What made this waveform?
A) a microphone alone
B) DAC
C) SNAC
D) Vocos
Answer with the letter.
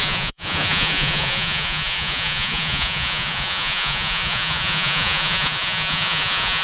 D